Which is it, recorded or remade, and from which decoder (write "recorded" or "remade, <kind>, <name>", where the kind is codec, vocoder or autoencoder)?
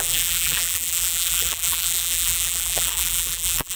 remade, vocoder, BigVGAN v2